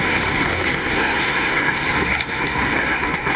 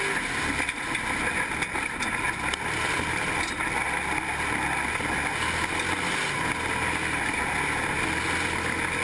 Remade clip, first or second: first